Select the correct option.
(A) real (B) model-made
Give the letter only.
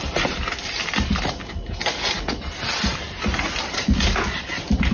A